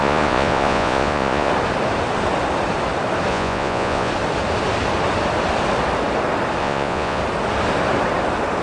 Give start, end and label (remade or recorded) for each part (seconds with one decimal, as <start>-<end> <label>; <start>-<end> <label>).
0.0-1.5 remade; 1.5-3.3 recorded; 3.3-4.1 remade; 4.1-6.6 recorded; 6.6-7.2 remade; 7.2-8.6 recorded